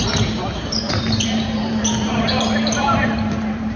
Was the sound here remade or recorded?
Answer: remade